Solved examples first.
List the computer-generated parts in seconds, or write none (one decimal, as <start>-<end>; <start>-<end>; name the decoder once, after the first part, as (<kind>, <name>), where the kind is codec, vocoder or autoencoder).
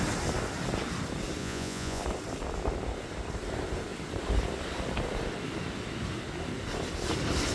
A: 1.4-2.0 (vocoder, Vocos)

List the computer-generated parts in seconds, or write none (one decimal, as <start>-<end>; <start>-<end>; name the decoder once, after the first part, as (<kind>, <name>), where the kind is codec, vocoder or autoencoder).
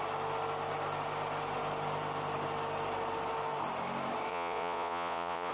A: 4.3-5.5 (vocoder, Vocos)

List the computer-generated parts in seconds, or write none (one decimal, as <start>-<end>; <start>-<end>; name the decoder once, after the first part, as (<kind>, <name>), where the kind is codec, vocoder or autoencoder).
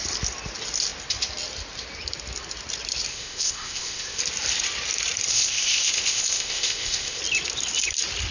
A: 3.1-4.2 (codec, ZipCodec); 5.3-7.2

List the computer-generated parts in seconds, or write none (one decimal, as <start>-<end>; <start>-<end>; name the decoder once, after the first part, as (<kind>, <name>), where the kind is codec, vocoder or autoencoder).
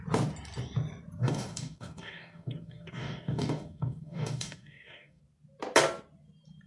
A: 1.2-5.2 (codec, DAC)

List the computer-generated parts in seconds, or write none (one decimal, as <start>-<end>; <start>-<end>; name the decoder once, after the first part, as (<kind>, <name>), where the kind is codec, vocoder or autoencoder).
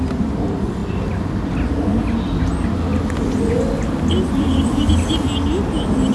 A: none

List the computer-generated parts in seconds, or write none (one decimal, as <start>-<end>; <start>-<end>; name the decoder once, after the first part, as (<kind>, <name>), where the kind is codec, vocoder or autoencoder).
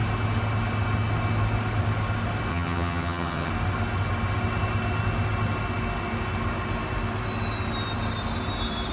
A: 2.5-3.5 (vocoder, HiFi-GAN)